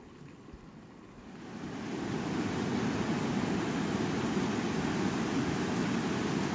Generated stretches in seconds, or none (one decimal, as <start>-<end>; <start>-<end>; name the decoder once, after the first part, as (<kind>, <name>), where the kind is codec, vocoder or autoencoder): none